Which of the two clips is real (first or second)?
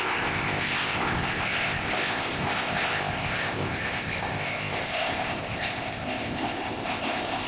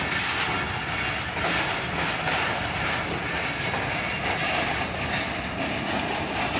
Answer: second